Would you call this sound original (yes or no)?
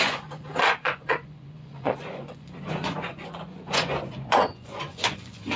no